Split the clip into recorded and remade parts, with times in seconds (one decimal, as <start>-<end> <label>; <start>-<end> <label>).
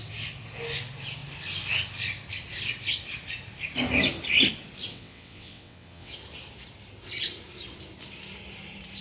0.0-4.9 recorded; 4.9-6.1 remade; 6.1-9.0 recorded